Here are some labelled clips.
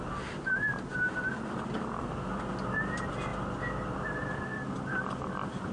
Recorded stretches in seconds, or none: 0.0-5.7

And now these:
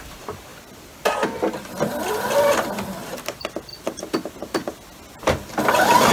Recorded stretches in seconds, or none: 0.0-6.1